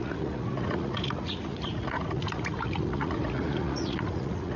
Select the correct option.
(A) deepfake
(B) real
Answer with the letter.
A